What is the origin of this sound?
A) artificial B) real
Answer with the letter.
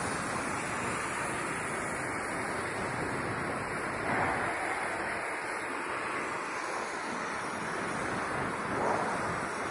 B